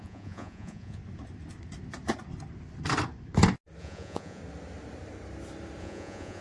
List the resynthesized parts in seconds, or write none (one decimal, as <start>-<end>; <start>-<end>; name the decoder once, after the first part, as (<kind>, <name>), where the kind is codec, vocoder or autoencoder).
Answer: 0.0-1.0 (vocoder, Vocos); 3.8-4.4; 5.8-6.4